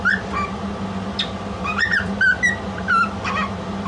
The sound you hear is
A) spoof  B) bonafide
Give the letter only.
B